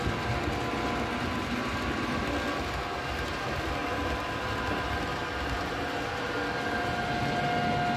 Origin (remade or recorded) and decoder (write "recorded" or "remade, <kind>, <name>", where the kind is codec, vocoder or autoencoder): recorded